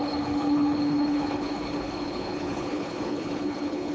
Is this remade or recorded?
remade